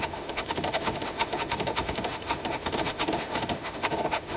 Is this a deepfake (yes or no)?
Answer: yes